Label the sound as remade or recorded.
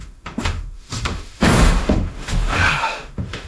remade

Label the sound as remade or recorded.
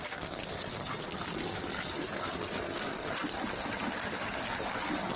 recorded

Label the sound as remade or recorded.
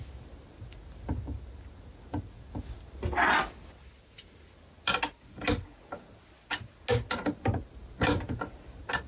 recorded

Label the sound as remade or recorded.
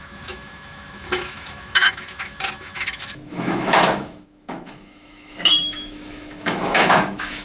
remade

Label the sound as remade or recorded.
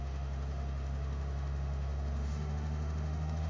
remade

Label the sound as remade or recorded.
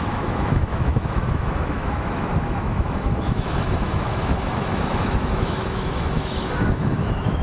remade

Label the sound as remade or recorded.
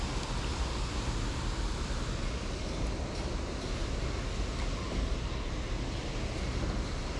recorded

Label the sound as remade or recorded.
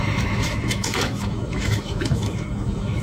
remade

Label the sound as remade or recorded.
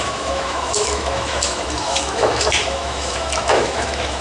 remade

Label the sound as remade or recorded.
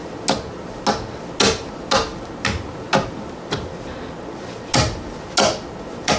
recorded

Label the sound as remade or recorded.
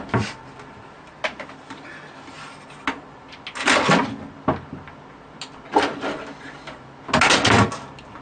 recorded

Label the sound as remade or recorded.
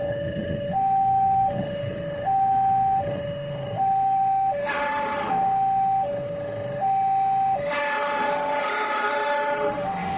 remade